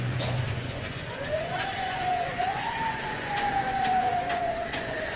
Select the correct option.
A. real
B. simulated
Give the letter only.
B